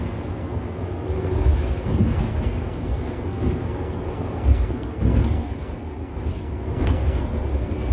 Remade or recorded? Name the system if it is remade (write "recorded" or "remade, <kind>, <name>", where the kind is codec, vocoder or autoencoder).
remade, codec, SNAC